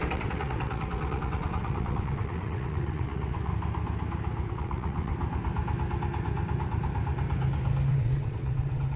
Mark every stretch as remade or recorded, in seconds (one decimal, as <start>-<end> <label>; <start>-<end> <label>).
0.0-3.5 remade; 3.5-4.5 recorded; 4.5-5.1 remade; 5.1-7.9 recorded; 7.9-9.0 remade